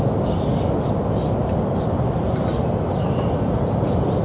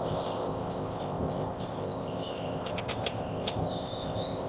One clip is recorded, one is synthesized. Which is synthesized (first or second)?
second